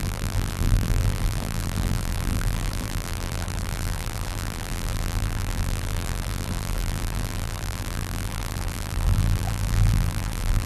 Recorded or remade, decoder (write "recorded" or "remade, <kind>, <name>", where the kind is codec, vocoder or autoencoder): remade, vocoder, BigVGAN v2